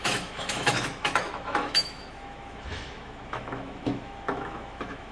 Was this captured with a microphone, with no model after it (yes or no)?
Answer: no